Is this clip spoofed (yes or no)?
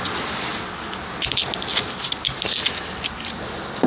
no